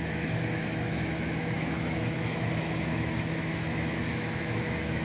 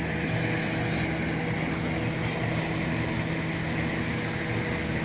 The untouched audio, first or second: second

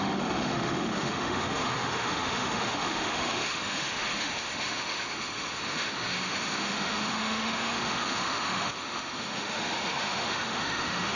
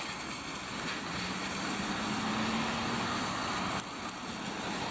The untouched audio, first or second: second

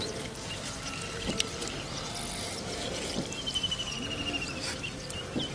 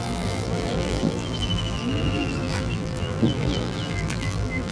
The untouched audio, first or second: first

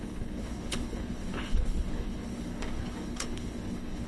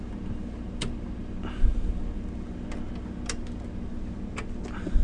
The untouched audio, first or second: second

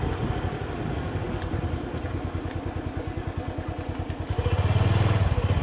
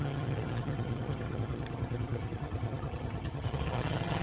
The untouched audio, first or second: first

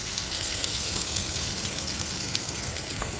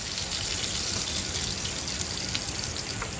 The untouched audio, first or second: second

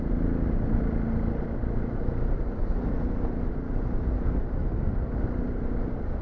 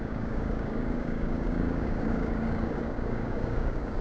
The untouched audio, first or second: first